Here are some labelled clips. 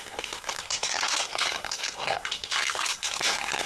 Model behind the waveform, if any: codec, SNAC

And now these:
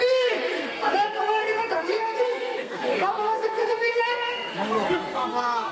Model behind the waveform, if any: codec, SNAC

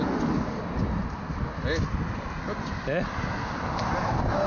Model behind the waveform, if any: none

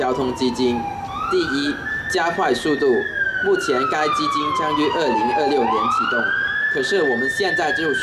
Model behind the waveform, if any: none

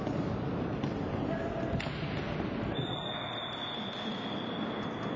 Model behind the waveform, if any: none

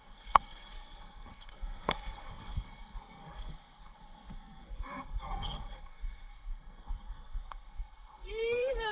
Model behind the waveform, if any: codec, SNAC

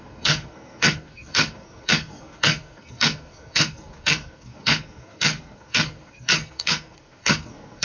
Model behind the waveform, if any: codec, SNAC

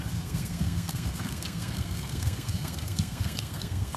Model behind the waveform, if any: codec, SNAC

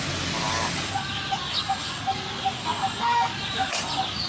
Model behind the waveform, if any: none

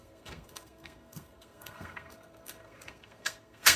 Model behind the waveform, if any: codec, SNAC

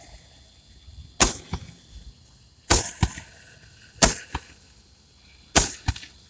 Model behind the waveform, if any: none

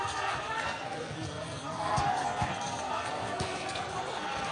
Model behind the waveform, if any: codec, SNAC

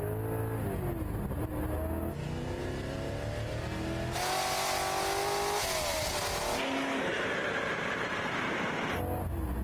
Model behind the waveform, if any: none